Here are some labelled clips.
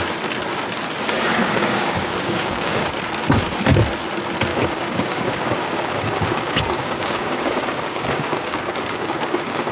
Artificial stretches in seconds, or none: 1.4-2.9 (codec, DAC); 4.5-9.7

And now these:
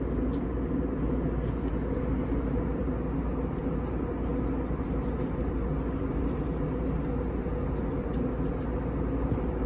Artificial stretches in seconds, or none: none

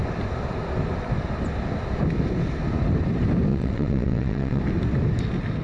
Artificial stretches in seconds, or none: 3.5-4.6 (vocoder, WaveNeXt)

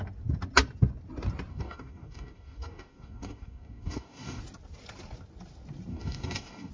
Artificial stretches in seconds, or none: 1.5-4.4 (codec, DAC); 5.9-6.7